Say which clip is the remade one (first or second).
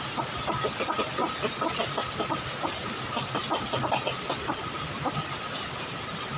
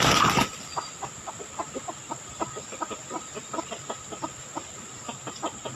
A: second